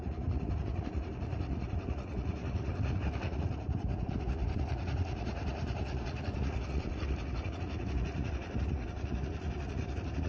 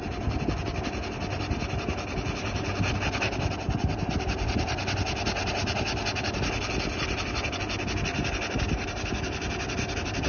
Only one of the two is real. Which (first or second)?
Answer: second